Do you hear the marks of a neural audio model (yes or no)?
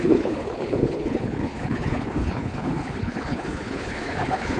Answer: yes